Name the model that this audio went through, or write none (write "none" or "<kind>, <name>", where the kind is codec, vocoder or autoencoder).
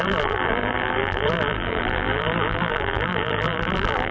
vocoder, BigVGAN v2